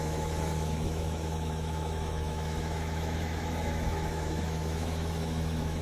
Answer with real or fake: fake